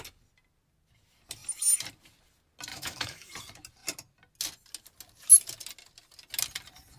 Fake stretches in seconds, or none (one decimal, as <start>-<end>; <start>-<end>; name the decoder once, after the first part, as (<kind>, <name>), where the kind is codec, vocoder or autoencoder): 2.7-3.3 (autoencoder, DAC-VAE)